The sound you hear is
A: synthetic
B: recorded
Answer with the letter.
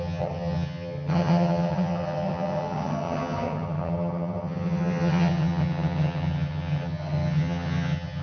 A